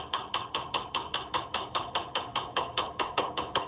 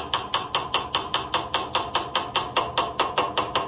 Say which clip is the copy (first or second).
first